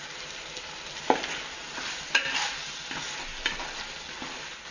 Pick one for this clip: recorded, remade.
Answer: recorded